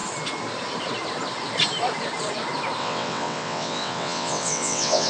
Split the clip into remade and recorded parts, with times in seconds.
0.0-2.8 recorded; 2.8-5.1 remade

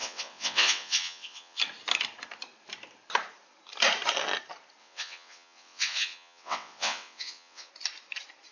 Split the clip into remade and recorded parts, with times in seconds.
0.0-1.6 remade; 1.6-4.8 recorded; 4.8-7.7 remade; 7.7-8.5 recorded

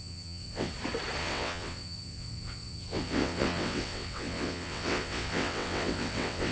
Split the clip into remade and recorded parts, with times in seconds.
0.0-0.7 remade; 0.7-1.2 recorded; 1.2-6.5 remade

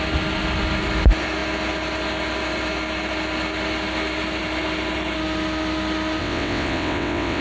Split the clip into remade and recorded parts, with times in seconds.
0.0-6.2 recorded; 6.2-7.4 remade

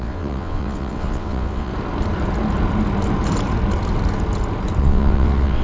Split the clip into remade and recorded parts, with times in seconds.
0.0-1.7 remade; 1.7-4.8 recorded; 4.8-5.6 remade

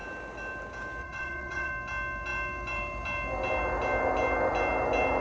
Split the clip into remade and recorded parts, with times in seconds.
0.0-1.0 recorded; 1.0-1.7 remade; 1.7-5.2 recorded

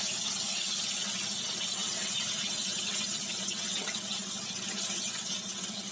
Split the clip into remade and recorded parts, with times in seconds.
0.0-5.9 remade